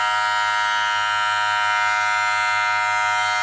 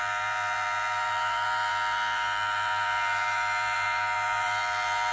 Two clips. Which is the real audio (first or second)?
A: first